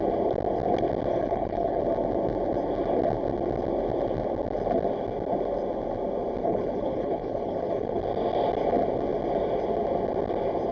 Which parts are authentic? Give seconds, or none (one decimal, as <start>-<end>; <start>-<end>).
0.0-1.1; 1.8-6.4; 8.0-10.7